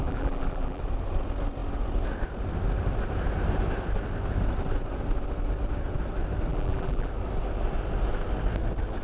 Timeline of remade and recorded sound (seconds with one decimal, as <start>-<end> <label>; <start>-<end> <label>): 0.0-0.8 remade; 0.8-6.5 recorded; 6.5-7.1 remade; 7.1-9.0 recorded